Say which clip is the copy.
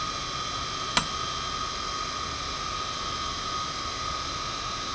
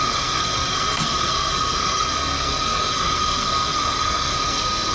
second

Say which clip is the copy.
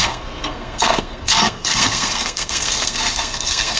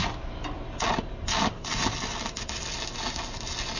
first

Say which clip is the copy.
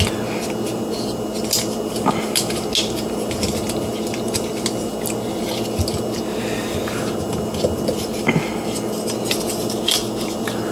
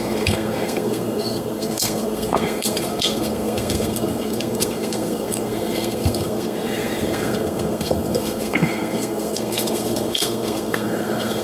second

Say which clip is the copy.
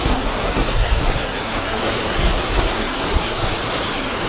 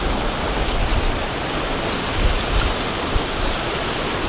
first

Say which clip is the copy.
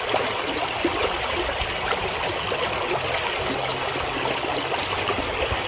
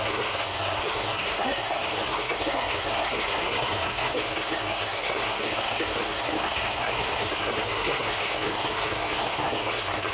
second